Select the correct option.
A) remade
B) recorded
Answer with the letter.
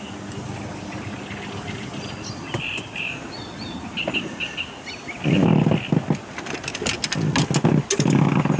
B